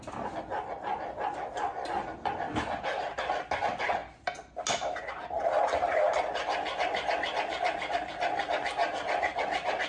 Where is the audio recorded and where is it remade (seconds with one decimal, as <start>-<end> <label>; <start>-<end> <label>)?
0.0-9.9 recorded